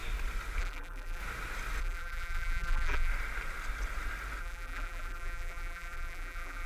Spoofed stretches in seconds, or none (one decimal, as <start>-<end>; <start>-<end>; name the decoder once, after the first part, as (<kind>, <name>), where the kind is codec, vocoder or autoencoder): 0.6-1.2 (vocoder, BigVGAN v2); 1.8-3.1; 4.4-6.7